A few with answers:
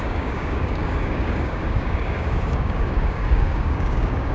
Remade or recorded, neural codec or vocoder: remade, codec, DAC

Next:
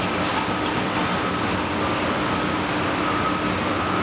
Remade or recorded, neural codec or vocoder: recorded